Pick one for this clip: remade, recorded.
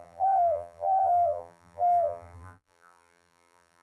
remade